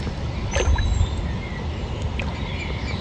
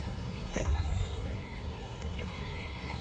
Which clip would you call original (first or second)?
first